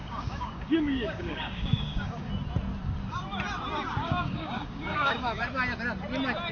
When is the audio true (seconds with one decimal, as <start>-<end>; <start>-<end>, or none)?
2.3-4.0; 5.4-6.5